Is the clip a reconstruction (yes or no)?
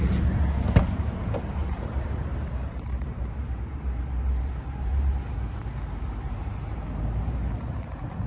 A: yes